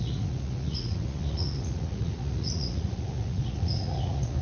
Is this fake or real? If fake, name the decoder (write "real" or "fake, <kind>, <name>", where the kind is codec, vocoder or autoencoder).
fake, vocoder, Vocos